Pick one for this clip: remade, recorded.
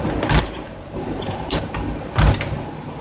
remade